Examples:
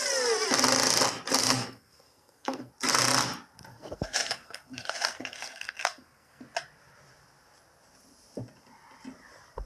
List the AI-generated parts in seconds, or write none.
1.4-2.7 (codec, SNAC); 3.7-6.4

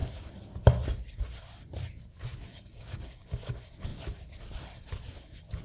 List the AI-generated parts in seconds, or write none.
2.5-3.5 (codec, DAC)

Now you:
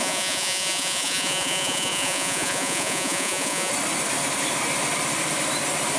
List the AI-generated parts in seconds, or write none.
0.0-3.7 (vocoder, Vocos)

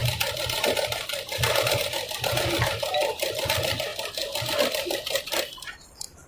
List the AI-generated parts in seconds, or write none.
1.6-3.9 (vocoder, BigVGAN v2); 5.2-6.3

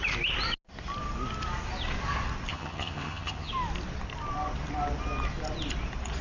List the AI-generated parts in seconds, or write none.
2.5-3.5 (vocoder, HiFi-GAN)

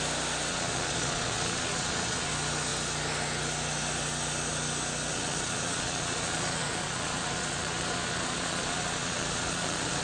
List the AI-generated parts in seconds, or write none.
0.5-2.3 (vocoder, Vocos); 5.1-10.0

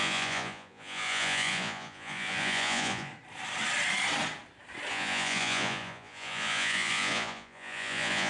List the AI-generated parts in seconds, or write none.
0.0-3.1 (vocoder, Vocos); 4.9-8.3